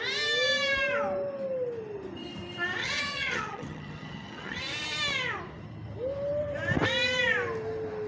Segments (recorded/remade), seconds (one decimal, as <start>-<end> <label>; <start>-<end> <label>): 0.0-2.8 recorded; 2.8-4.6 remade; 4.6-8.1 recorded